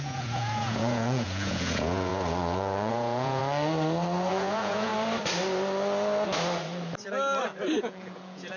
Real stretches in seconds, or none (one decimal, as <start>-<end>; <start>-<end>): 3.4-4.3; 4.9-7.8